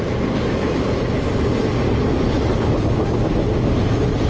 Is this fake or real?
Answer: real